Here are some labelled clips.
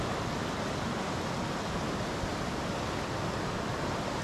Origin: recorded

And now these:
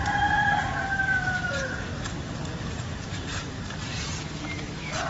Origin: remade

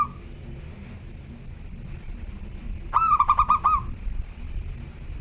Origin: recorded